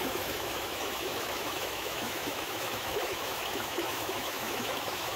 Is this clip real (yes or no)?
no